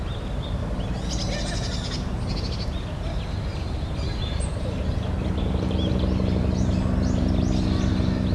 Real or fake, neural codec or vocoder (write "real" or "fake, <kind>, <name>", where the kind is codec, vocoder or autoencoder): real